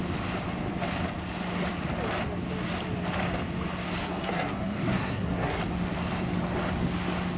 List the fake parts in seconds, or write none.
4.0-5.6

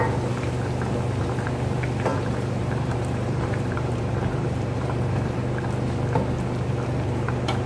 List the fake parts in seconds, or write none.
2.1-5.4

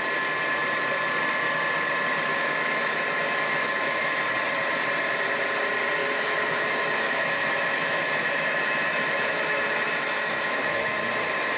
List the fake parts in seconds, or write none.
2.3-4.2; 6.0-11.0

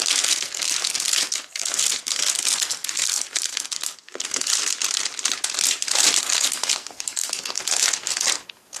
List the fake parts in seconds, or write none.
0.0-4.5; 6.2-8.8

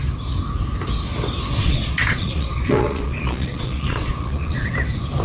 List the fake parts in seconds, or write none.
1.6-4.7

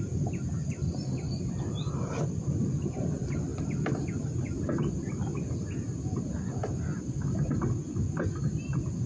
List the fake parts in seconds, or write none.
0.0-9.1

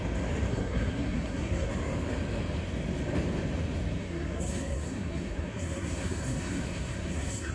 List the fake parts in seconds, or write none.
0.5-1.7; 4.0-7.5